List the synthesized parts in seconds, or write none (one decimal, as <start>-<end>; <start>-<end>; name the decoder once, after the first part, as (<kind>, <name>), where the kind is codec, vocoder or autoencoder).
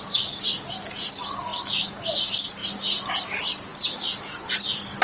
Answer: none